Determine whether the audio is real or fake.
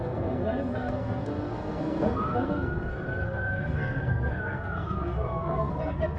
fake